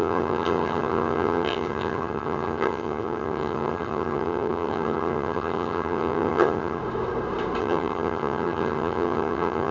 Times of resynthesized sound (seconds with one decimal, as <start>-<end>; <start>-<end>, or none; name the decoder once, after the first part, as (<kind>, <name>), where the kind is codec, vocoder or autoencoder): 0.0-6.8 (vocoder, HiFi-GAN); 7.6-9.7

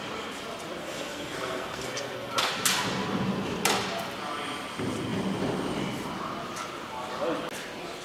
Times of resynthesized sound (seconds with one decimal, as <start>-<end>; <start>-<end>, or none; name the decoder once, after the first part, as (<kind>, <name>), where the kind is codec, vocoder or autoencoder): 0.8-2.5 (codec, SNAC)

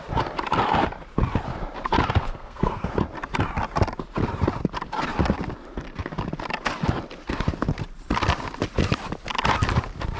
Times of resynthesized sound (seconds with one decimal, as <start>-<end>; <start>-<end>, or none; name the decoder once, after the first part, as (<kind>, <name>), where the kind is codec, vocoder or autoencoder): 2.2-2.9 (codec, SNAC)

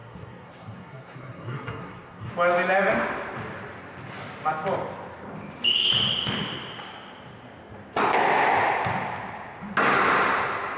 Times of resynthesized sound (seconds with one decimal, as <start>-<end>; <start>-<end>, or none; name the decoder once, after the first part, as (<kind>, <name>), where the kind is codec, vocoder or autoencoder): 0.0-2.3 (codec, SNAC)

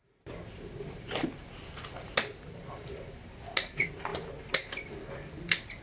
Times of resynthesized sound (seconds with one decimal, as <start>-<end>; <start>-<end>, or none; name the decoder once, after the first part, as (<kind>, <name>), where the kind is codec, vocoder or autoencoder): none

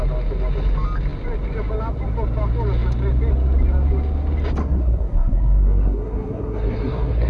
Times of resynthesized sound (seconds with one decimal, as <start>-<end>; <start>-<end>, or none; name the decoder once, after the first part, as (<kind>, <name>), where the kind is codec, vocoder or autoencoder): 4.6-7.3 (codec, SNAC)

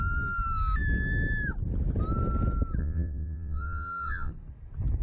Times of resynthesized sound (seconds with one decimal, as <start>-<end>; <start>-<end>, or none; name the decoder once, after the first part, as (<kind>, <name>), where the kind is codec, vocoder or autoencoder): 2.8-4.3 (vocoder, WaveNeXt)